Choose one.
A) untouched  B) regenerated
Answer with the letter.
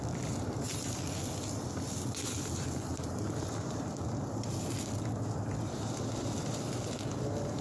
B